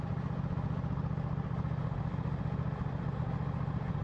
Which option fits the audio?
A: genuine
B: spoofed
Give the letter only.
B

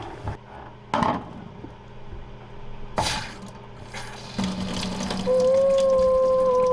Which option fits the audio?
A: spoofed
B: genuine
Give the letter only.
B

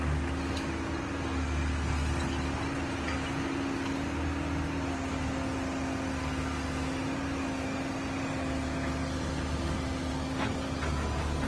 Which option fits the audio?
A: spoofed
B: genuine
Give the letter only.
B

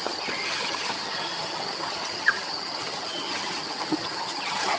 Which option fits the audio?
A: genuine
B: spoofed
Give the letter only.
B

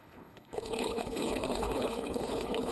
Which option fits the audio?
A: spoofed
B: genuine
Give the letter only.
A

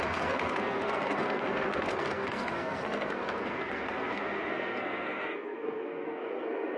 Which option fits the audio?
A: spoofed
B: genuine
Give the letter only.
A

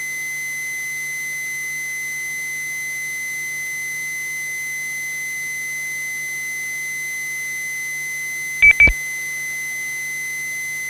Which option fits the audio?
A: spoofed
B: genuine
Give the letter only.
B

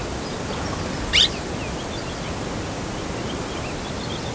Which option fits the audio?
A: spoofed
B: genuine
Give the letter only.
B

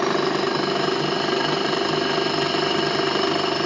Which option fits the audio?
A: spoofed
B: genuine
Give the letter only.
B